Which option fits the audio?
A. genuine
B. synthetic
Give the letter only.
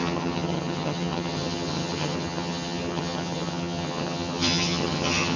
B